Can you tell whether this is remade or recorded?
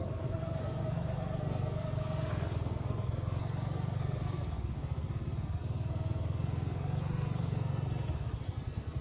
remade